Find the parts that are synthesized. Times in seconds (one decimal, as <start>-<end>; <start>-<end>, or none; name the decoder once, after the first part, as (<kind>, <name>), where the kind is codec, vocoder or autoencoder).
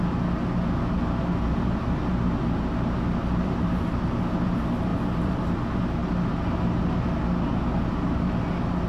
none